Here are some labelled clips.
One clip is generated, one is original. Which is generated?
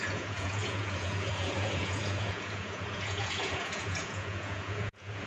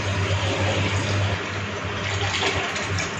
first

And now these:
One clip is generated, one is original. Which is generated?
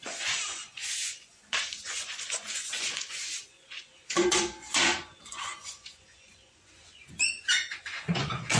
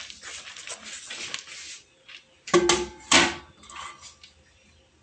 first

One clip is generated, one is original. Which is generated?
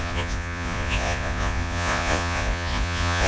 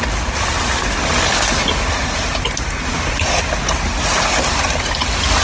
first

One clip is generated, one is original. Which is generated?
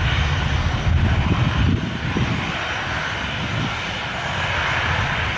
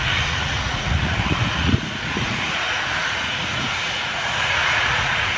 second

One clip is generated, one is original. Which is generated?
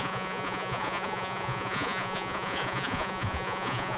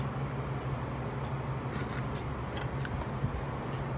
first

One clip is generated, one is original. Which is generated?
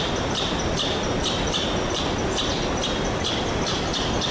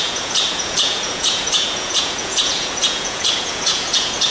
second